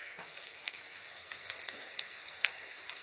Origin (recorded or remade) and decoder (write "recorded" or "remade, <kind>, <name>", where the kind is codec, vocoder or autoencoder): remade, codec, SNAC